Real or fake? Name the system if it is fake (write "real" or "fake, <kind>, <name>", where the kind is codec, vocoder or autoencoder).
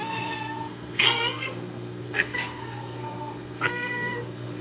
fake, codec, SNAC